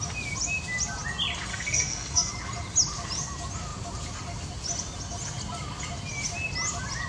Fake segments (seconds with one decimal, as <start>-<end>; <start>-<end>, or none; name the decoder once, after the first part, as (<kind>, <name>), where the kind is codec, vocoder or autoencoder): 1.5-2.3 (codec, SNAC)